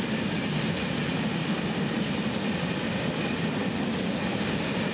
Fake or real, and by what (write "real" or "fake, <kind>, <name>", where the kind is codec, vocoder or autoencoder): real